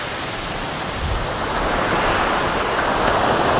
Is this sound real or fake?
real